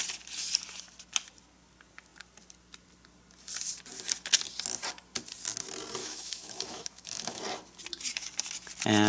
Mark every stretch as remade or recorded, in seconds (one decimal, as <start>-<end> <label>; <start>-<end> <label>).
0.0-6.0 recorded; 6.0-7.4 remade; 7.4-9.1 recorded